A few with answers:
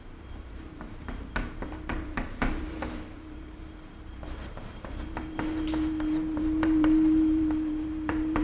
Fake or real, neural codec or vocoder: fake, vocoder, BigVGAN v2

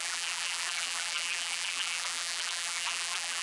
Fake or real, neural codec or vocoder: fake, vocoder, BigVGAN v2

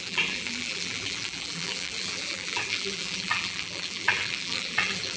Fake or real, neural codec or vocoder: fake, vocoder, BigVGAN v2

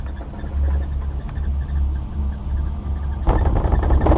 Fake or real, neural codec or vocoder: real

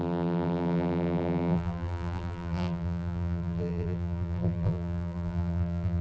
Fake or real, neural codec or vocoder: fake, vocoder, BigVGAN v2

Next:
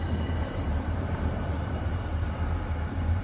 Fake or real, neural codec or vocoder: fake, vocoder, BigVGAN v2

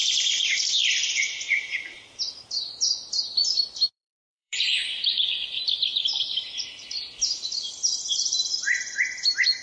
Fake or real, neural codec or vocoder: fake, vocoder, BigVGAN v2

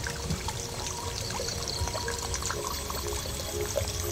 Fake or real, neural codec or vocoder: fake, vocoder, BigVGAN v2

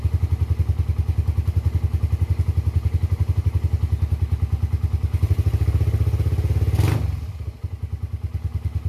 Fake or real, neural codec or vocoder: real